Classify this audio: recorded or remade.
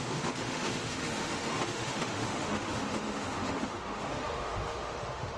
remade